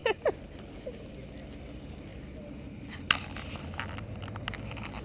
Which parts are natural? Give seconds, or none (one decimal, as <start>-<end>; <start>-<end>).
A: 0.0-5.0